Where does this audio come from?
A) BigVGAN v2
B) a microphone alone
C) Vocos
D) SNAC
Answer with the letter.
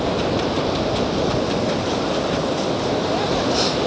B